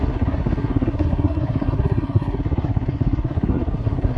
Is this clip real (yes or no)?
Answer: no